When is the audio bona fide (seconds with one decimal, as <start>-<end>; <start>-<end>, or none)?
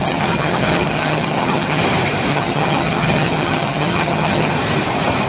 1.8-2.3; 4.5-5.3